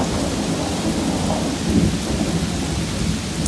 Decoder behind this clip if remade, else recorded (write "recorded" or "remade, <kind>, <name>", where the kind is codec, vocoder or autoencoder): recorded